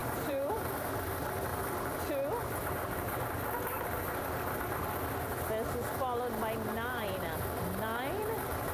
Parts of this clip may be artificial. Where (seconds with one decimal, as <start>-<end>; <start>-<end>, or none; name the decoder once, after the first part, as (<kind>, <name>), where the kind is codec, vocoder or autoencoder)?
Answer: 0.0-0.6 (vocoder, BigVGAN v2)